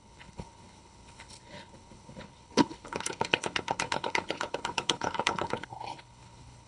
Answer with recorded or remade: remade